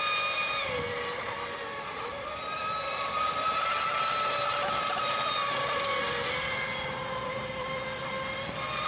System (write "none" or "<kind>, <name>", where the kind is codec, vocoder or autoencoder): none